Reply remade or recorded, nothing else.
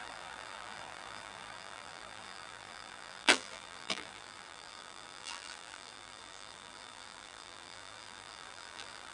remade